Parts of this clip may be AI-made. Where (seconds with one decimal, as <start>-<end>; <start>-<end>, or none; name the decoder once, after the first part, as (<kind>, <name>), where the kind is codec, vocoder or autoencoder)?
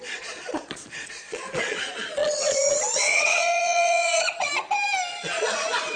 0.0-4.5 (vocoder, Vocos); 5.1-6.0